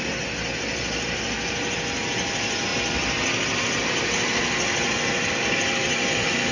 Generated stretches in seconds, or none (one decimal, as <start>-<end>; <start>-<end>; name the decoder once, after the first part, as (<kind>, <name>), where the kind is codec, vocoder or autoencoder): none